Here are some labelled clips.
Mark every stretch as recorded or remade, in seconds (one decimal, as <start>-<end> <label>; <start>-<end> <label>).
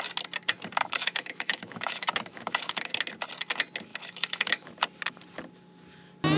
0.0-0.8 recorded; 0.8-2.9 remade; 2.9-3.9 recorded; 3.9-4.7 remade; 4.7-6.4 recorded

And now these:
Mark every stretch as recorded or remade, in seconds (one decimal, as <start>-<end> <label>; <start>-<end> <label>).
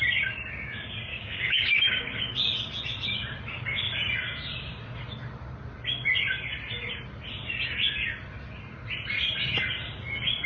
0.0-1.1 recorded; 1.1-2.3 remade; 2.3-10.5 recorded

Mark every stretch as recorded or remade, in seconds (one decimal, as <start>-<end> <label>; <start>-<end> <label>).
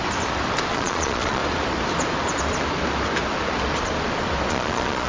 0.0-0.7 recorded; 0.7-1.4 remade; 1.4-4.5 recorded; 4.5-5.1 remade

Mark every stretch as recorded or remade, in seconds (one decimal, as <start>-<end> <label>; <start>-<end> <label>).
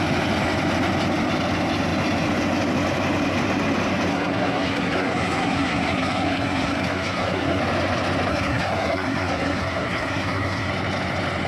0.0-4.1 recorded; 4.1-7.6 remade; 7.6-8.3 recorded; 8.3-10.7 remade; 10.7-11.5 recorded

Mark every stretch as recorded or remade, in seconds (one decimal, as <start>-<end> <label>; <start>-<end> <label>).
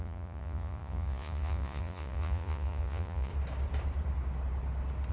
0.0-3.3 remade; 3.3-5.1 recorded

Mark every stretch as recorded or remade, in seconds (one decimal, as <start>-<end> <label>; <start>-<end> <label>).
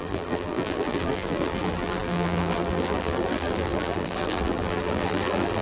0.0-5.6 remade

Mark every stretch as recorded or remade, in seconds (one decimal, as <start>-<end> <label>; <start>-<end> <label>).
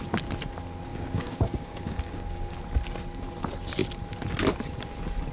0.0-0.9 recorded; 0.9-2.6 remade; 2.6-5.3 recorded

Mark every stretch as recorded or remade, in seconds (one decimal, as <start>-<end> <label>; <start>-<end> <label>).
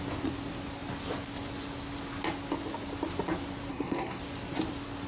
0.0-3.7 recorded; 3.7-4.2 remade; 4.2-5.1 recorded